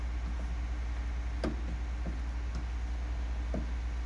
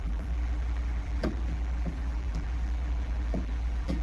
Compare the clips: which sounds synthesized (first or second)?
second